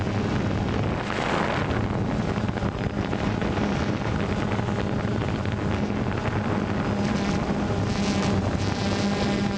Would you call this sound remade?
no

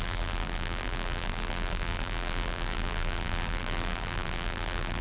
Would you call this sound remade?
yes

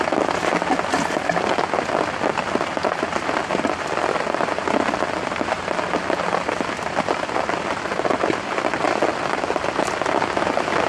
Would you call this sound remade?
no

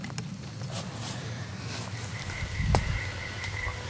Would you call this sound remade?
no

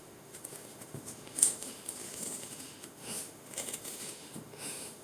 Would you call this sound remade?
yes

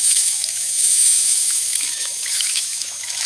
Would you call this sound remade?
yes